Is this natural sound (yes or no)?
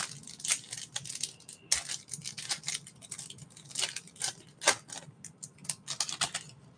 yes